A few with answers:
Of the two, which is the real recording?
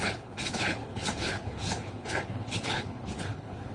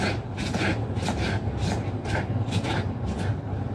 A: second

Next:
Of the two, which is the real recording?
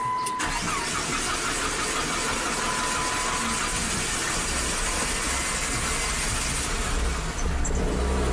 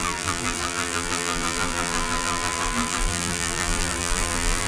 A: first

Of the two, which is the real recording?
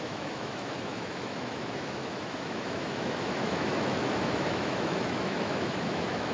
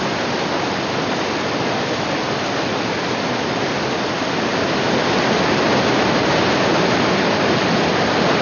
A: second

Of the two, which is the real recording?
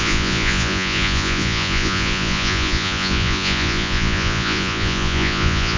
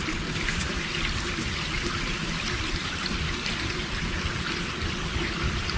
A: second